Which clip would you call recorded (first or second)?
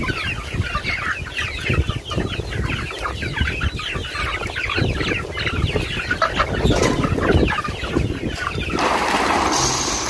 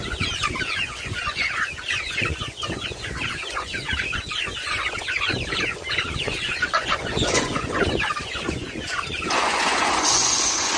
first